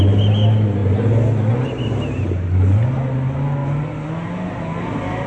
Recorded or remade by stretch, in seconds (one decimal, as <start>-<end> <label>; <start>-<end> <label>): 0.0-5.3 recorded